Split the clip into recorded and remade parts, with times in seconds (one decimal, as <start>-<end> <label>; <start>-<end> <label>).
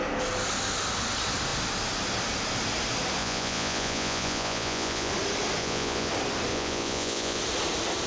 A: 0.0-3.2 recorded; 3.2-5.1 remade; 5.1-5.6 recorded; 5.6-6.1 remade; 6.1-6.5 recorded; 6.5-7.4 remade; 7.4-8.1 recorded